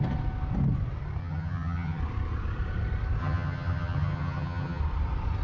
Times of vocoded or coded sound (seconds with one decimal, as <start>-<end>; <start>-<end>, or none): 1.2-2.0; 3.2-4.8